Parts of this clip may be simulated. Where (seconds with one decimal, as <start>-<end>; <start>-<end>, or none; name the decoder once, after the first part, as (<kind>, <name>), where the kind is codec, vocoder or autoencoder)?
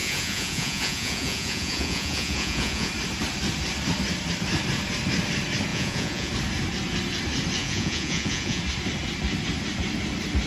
0.0-2.9 (vocoder, Vocos); 5.7-6.3; 7.6-8.6